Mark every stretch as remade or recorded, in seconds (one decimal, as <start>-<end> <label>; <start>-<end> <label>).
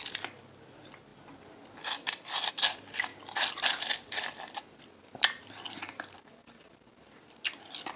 0.0-1.1 recorded; 1.1-2.5 remade; 2.5-3.1 recorded; 3.1-8.0 remade